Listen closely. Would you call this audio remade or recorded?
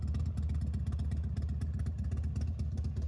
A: recorded